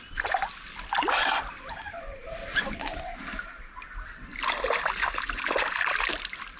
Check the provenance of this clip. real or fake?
real